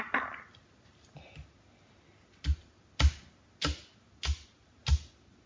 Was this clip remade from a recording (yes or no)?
no